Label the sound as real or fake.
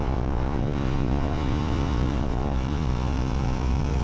fake